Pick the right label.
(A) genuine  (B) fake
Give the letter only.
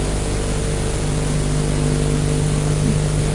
A